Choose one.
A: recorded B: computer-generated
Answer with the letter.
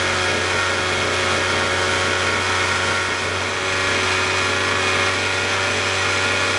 A